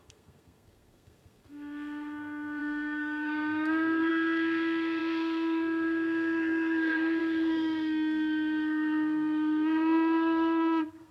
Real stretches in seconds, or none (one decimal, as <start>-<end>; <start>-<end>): none

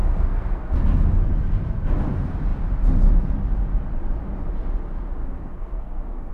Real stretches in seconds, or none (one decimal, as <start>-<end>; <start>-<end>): 0.8-5.2

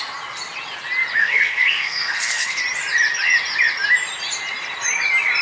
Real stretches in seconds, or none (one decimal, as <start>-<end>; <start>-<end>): 0.0-1.2; 2.6-5.4